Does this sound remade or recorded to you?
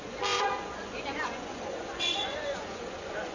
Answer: remade